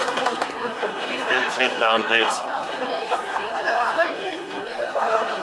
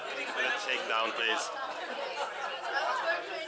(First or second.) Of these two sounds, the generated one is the first